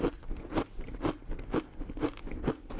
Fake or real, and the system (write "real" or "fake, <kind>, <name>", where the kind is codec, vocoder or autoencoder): real